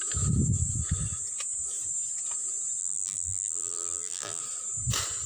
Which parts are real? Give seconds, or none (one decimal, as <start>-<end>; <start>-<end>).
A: 0.0-2.8; 4.4-5.3